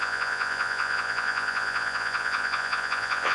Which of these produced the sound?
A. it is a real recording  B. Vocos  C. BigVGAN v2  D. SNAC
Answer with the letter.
B